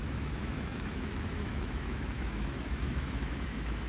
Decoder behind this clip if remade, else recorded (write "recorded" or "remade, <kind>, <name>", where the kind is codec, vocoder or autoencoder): remade, autoencoder, DAC-VAE